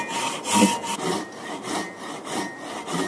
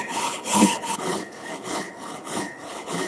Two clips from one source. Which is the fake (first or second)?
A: second